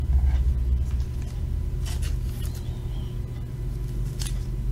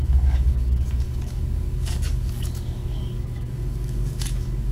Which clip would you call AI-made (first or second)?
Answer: second